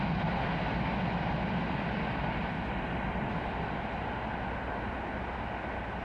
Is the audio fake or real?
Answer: real